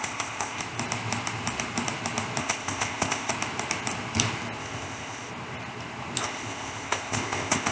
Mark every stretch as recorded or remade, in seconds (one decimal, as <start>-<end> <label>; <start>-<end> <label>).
0.0-0.6 remade; 0.6-2.4 recorded; 2.4-3.3 remade; 3.3-4.6 recorded; 4.6-5.3 remade; 5.3-6.2 recorded; 6.2-7.7 remade